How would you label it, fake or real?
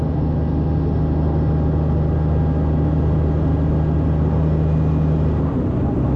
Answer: real